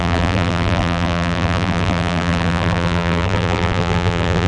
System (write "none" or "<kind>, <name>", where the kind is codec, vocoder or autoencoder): vocoder, BigVGAN v2